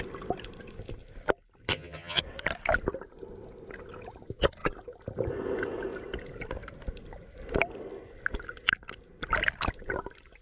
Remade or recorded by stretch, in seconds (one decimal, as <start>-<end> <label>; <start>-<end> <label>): 0.0-1.7 recorded; 1.7-2.2 remade; 2.2-10.4 recorded